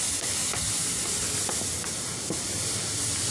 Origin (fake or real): real